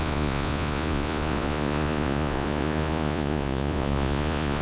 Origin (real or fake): fake